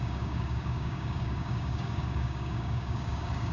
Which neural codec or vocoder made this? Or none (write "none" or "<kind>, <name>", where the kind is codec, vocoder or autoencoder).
codec, DAC